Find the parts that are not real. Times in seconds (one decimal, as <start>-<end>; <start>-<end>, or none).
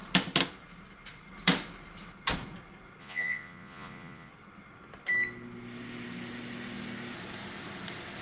3.0-4.3